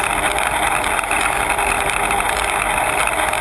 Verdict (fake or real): real